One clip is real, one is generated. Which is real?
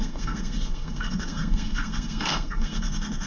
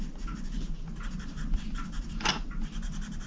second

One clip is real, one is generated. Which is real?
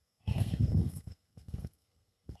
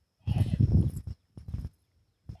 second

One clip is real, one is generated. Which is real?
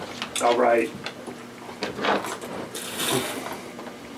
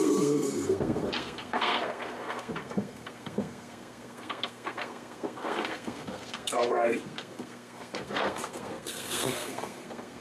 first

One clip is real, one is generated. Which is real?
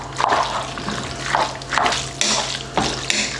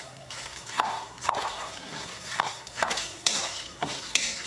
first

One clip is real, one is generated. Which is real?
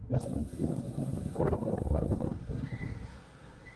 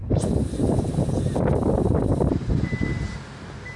second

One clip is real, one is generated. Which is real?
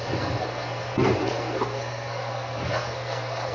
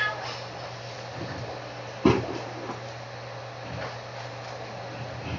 second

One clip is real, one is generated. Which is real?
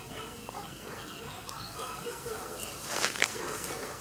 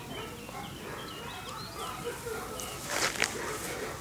second